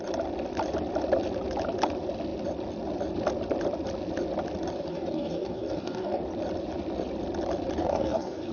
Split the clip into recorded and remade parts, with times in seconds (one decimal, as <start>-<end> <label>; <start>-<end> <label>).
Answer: 0.0-4.9 recorded; 4.9-6.2 remade; 6.2-7.8 recorded; 7.8-8.5 remade